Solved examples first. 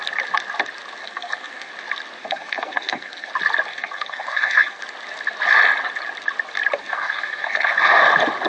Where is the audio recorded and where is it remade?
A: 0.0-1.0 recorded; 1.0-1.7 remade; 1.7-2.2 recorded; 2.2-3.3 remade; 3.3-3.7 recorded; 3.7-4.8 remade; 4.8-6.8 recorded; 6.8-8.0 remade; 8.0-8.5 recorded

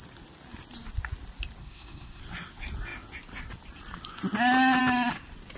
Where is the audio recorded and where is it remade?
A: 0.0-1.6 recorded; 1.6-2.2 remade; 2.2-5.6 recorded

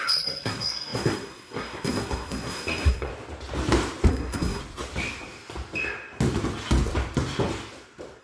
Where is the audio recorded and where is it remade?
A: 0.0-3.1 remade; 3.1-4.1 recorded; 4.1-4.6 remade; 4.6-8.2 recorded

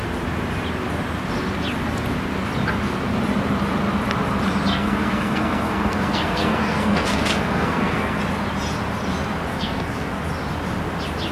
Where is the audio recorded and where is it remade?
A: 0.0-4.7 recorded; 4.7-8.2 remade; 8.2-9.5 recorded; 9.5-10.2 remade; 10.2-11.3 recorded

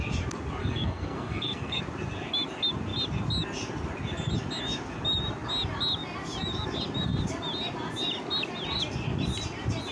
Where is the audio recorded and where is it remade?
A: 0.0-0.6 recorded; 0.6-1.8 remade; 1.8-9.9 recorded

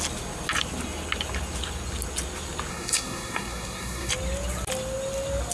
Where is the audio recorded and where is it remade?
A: 0.0-2.7 recorded; 2.7-4.1 remade; 4.1-5.5 recorded

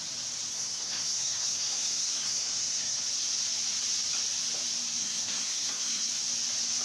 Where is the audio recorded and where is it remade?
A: 0.0-0.5 recorded; 0.5-3.0 remade; 3.0-5.0 recorded; 5.0-6.1 remade; 6.1-6.8 recorded

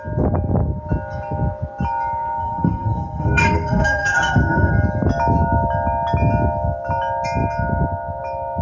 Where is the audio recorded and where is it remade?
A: 0.0-2.4 recorded; 2.4-4.7 remade; 4.7-8.6 recorded